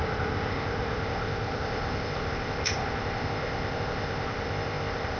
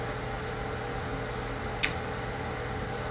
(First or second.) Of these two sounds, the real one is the second